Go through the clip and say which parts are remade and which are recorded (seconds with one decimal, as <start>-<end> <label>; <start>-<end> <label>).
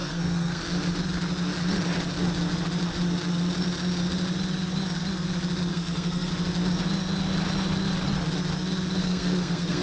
0.0-0.6 remade; 0.6-5.7 recorded; 5.7-6.3 remade; 6.3-9.0 recorded; 9.0-9.8 remade